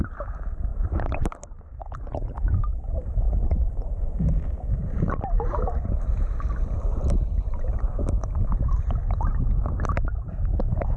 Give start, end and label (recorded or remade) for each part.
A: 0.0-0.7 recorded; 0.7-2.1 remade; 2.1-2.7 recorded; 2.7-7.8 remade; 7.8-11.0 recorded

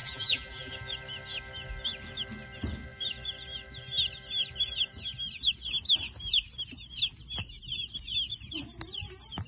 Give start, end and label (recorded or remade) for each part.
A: 0.0-0.7 remade; 0.7-9.5 recorded